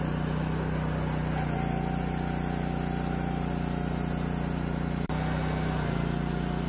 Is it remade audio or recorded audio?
recorded